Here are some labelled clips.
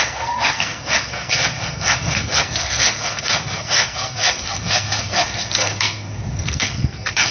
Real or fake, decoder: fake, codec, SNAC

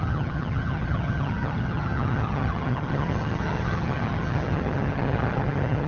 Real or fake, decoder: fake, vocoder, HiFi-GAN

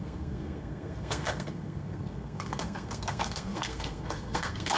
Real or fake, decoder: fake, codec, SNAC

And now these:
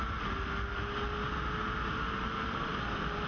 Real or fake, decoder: real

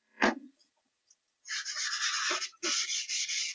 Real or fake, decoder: fake, vocoder, Vocos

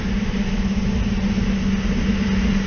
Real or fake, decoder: real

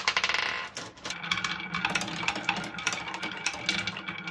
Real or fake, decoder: real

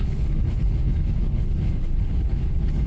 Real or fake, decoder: fake, codec, HILCodec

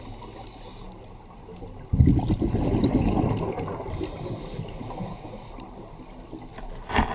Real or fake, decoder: real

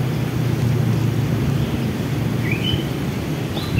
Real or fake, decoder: real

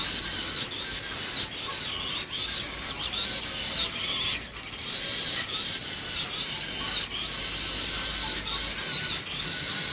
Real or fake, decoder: real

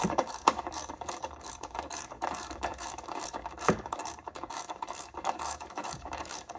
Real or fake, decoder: fake, codec, DAC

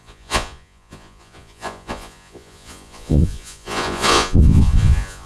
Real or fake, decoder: fake, vocoder, Vocos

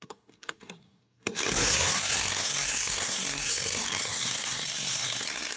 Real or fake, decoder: fake, codec, SNAC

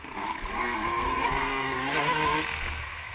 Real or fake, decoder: fake, codec, SNAC